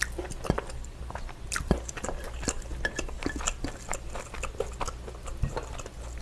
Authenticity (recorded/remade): recorded